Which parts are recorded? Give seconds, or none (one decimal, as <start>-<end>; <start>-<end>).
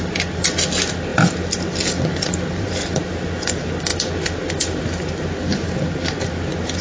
0.0-6.8